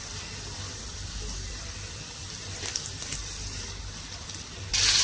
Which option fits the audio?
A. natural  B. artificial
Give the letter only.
B